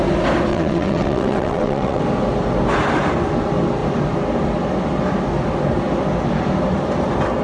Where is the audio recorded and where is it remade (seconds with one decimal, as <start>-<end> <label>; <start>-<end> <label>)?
0.0-0.5 recorded; 0.5-2.0 remade; 2.0-7.4 recorded